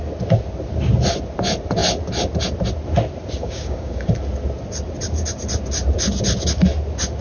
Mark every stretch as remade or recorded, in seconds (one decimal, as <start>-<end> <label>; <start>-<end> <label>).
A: 0.0-3.4 recorded; 3.4-4.1 remade; 4.1-7.2 recorded